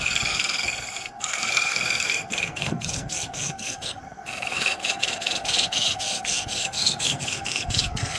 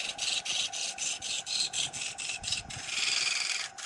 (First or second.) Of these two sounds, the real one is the second